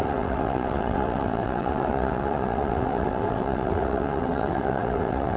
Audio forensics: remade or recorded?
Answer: remade